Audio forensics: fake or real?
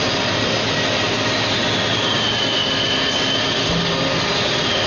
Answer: real